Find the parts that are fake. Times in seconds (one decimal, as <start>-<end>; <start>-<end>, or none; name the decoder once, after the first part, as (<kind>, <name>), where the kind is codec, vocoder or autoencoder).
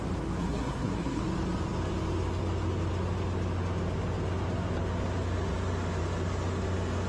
0.4-1.2 (codec, SNAC)